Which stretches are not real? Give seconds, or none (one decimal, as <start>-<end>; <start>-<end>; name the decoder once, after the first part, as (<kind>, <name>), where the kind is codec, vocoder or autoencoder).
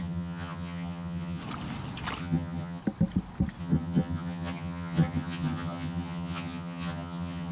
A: 0.0-1.4 (vocoder, HiFi-GAN); 2.2-2.8; 3.6-7.5